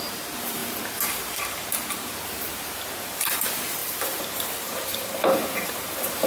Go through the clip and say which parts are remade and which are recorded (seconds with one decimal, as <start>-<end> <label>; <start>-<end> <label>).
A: 0.0-6.3 remade